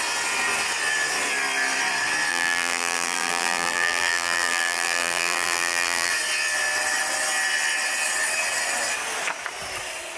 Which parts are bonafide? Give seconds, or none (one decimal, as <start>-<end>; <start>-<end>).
0.0-2.3; 6.1-10.2

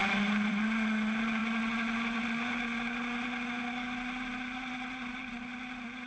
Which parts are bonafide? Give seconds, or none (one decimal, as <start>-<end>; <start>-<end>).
0.6-6.1